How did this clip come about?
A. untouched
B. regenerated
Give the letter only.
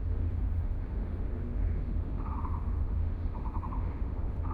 B